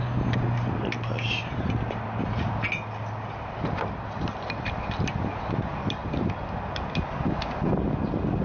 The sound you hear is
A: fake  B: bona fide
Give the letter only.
B